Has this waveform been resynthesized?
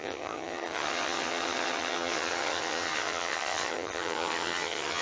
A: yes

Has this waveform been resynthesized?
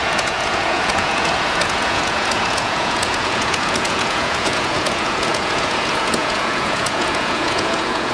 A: yes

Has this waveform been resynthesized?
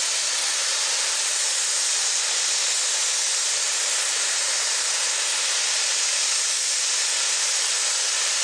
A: no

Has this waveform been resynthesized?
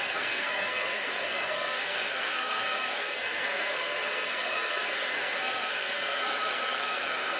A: yes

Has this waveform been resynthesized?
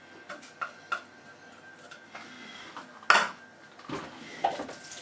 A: no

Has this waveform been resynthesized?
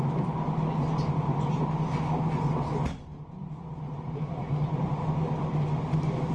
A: no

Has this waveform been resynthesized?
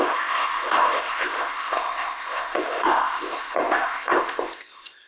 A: yes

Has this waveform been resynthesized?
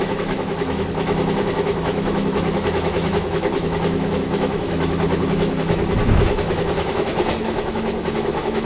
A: yes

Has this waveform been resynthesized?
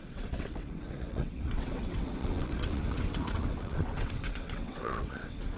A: yes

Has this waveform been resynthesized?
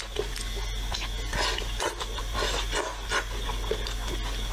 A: no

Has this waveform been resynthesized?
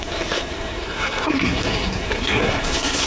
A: yes